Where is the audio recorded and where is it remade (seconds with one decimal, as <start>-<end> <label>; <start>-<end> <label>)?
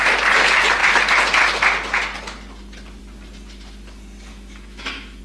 0.0-4.3 recorded; 4.3-5.2 remade